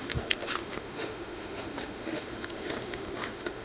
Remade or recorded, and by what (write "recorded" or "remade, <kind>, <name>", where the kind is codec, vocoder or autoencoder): remade, autoencoder, DAC-VAE